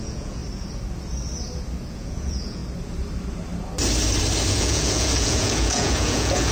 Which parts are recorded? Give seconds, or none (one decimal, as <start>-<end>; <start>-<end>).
0.4-1.9; 2.6-4.5